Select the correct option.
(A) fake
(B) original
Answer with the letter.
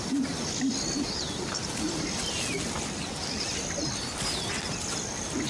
A